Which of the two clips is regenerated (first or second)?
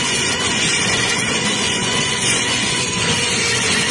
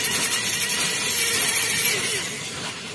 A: first